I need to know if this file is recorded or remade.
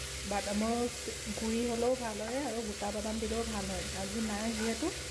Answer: recorded